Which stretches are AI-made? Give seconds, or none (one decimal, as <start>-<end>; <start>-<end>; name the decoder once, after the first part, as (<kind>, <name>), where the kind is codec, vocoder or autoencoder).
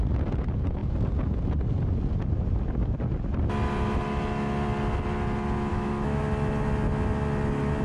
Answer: 5.7-6.2 (autoencoder, DAC-VAE)